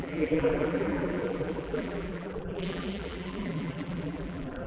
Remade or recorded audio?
remade